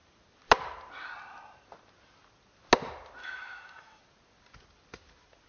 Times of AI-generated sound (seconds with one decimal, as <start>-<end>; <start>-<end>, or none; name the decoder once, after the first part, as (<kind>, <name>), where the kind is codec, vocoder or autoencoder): 3.2-4.0 (autoencoder, DAC-VAE)

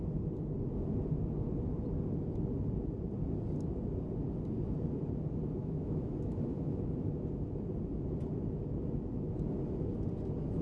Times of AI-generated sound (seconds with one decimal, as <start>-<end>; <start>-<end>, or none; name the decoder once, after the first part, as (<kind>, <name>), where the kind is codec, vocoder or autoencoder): 5.6-6.8 (autoencoder, DAC-VAE)

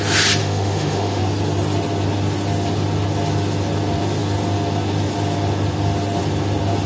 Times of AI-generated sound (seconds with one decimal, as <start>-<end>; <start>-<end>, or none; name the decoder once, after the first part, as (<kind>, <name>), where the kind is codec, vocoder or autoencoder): 0.4-1.2 (autoencoder, DAC-VAE)

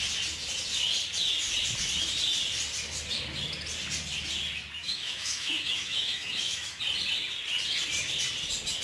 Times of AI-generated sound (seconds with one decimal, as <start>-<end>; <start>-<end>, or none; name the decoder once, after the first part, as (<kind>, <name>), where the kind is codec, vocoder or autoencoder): 4.8-6.8 (autoencoder, DAC-VAE)

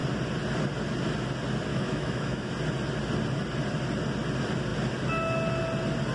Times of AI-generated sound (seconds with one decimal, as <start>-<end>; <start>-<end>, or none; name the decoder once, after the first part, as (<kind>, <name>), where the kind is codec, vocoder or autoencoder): 1.7-2.5 (autoencoder, DAC-VAE)

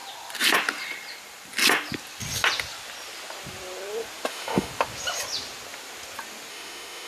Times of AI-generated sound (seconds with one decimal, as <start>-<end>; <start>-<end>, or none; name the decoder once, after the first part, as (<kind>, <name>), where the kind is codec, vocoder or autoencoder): 4.3-4.7 (autoencoder, DAC-VAE); 6.5-7.1

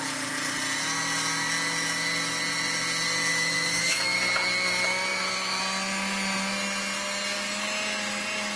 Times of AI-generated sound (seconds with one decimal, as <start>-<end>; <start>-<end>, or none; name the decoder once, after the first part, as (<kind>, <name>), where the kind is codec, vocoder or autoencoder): 3.3-4.2 (autoencoder, DAC-VAE); 5.1-5.6

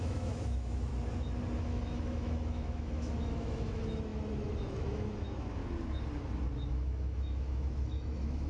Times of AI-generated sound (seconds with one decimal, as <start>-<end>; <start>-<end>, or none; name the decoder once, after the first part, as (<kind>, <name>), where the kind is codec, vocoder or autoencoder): 0.0-0.9 (autoencoder, DAC-VAE); 1.6-5.6; 6.7-8.5